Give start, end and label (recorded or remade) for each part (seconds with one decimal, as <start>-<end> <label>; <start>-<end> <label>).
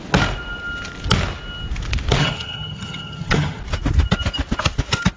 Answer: 0.0-2.2 recorded; 2.2-3.6 remade; 3.6-5.2 recorded